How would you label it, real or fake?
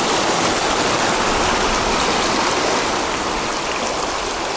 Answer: real